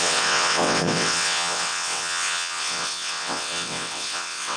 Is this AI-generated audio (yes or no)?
yes